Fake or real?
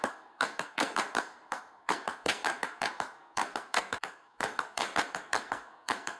fake